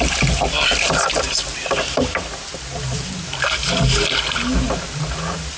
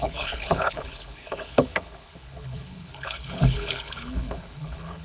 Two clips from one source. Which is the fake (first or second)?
second